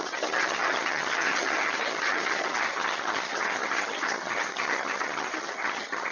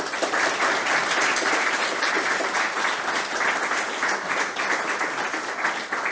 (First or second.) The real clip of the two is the second